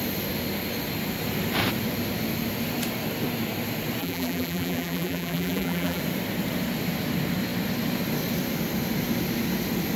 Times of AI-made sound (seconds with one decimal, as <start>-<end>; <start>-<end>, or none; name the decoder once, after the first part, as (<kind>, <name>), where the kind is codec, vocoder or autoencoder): 4.0-6.0 (vocoder, BigVGAN v2)